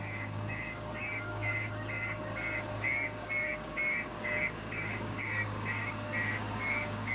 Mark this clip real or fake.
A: fake